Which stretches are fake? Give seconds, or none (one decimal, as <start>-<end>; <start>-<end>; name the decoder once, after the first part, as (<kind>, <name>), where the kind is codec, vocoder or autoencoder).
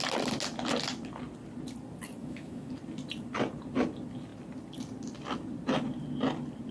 2.2-2.7 (autoencoder, DAC-VAE)